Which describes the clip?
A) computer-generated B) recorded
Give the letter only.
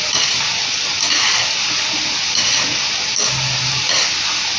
B